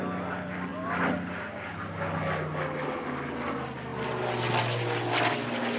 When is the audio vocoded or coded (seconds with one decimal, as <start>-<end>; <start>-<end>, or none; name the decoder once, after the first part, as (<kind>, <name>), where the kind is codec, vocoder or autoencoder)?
none